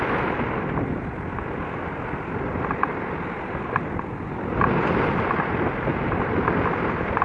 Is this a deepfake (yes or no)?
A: no